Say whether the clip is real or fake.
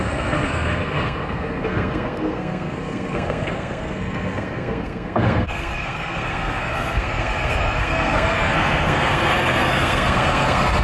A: fake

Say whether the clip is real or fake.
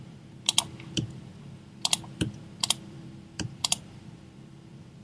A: fake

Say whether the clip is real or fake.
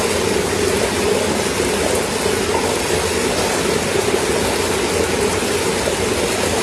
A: real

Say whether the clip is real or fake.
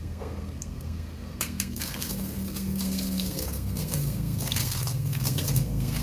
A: fake